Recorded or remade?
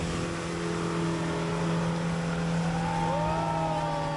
recorded